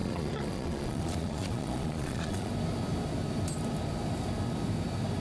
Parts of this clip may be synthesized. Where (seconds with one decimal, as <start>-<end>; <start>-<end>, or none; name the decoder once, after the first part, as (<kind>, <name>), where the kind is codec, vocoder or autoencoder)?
0.0-2.5 (vocoder, Vocos)